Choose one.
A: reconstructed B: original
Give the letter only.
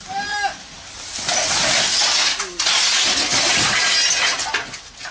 B